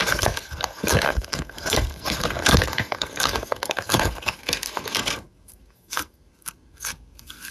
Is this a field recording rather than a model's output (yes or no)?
no